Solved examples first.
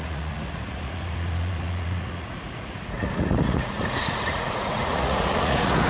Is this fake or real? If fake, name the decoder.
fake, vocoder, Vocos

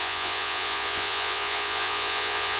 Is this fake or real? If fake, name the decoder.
fake, vocoder, Vocos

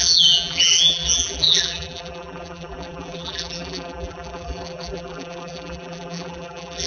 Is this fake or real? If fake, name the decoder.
fake, vocoder, BigVGAN v2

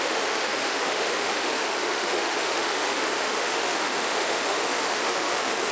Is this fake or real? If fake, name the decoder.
fake, autoencoder, DAC-VAE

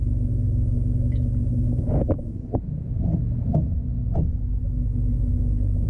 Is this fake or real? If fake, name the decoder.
real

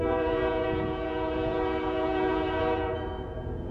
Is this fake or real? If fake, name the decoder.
fake, vocoder, Vocos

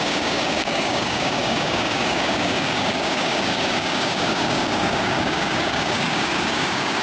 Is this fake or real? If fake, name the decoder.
fake, codec, DAC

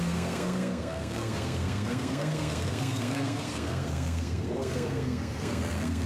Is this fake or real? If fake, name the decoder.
fake, codec, SNAC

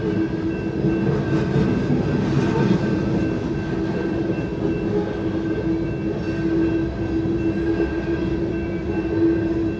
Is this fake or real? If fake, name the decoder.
real